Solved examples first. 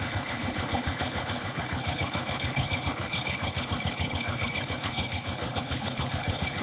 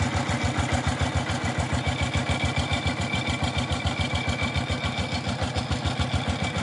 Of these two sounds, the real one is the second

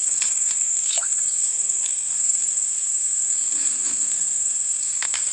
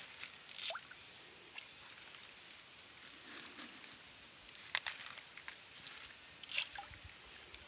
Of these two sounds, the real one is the second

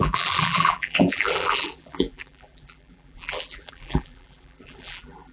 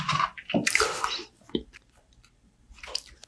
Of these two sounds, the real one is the second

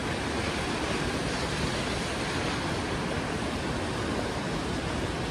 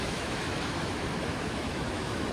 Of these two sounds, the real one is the first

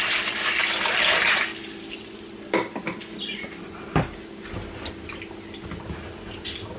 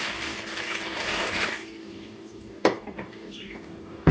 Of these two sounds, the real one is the first